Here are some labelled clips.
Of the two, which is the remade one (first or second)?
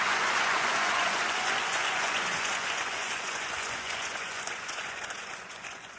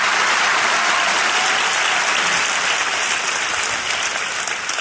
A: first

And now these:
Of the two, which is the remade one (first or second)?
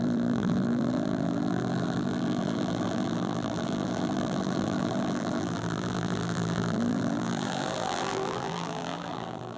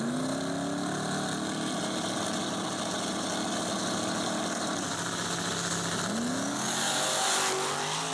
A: first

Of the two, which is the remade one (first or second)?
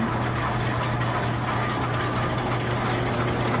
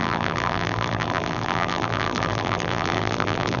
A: second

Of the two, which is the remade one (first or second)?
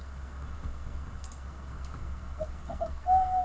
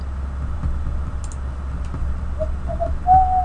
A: first